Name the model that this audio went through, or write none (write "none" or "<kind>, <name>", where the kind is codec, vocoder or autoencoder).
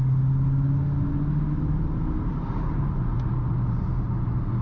none